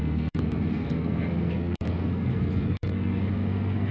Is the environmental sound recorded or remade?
remade